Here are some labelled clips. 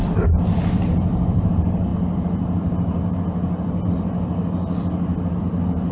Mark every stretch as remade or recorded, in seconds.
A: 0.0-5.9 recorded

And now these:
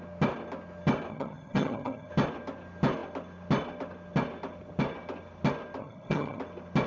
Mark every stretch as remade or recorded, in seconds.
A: 0.0-1.1 recorded; 1.1-2.1 remade; 2.1-5.8 recorded; 5.8-6.4 remade; 6.4-6.9 recorded

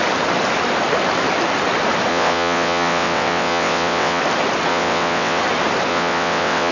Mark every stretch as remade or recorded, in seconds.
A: 0.0-2.1 recorded; 2.1-4.2 remade; 4.2-4.7 recorded; 4.7-5.4 remade; 5.4-5.9 recorded; 5.9-6.7 remade

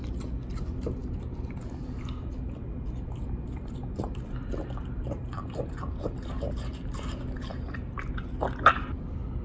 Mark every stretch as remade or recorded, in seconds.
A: 0.0-5.4 recorded; 5.4-6.5 remade; 6.5-7.5 recorded; 7.5-8.1 remade; 8.1-9.4 recorded

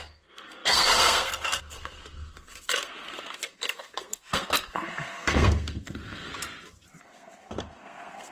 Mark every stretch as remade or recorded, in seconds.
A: 0.0-6.3 remade; 6.3-7.0 recorded; 7.0-8.3 remade

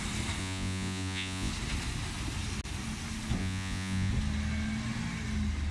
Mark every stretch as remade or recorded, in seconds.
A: 0.0-0.4 recorded; 0.4-1.5 remade; 1.5-3.4 recorded; 3.4-4.1 remade; 4.1-5.7 recorded